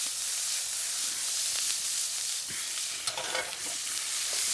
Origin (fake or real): fake